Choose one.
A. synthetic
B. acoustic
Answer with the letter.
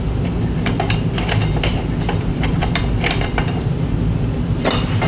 B